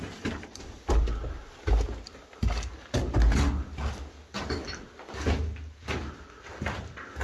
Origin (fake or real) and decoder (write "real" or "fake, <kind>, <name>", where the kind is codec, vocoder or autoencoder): real